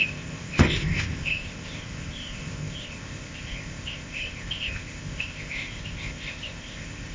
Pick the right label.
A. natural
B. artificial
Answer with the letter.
B